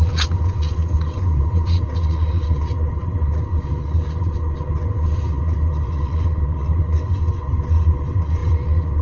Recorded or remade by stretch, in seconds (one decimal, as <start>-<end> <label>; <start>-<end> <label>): 0.0-9.0 remade